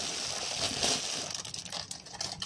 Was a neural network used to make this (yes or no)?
no